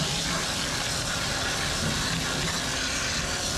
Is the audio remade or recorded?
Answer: recorded